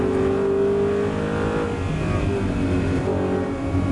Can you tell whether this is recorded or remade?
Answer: recorded